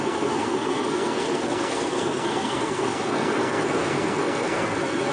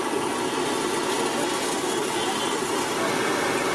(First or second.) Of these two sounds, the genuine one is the second